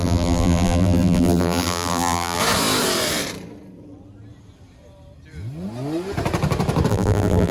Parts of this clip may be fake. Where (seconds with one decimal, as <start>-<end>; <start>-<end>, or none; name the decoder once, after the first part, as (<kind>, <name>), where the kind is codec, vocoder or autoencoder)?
0.0-2.4 (vocoder, BigVGAN v2); 6.9-7.5